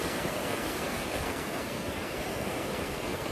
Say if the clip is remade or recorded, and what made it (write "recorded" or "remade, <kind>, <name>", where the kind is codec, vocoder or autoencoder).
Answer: remade, codec, SNAC